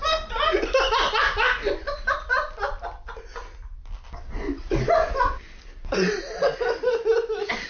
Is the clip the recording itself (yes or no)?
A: yes